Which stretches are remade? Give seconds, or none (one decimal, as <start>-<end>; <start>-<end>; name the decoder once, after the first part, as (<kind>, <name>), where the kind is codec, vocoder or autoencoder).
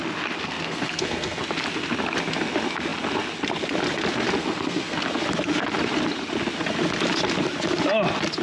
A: 0.4-1.4 (codec, SNAC); 4.4-5.0